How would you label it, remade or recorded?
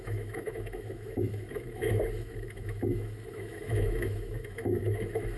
remade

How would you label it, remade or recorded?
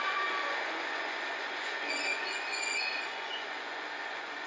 remade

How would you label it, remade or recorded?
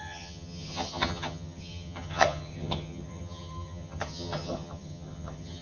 remade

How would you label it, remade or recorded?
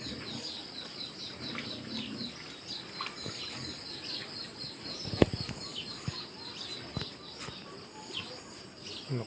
recorded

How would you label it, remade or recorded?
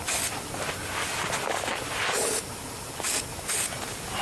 recorded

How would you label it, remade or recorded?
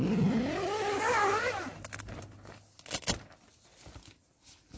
recorded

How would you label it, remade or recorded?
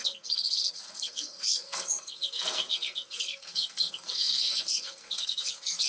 remade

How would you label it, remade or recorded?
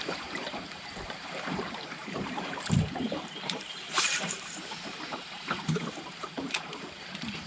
remade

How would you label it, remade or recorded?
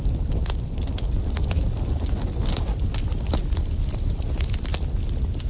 recorded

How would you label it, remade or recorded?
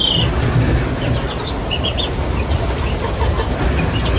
recorded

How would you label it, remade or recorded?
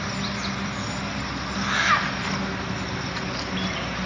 recorded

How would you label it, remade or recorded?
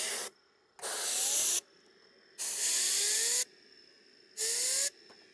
recorded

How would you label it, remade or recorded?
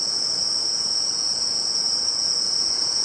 remade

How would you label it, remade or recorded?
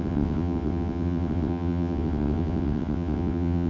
remade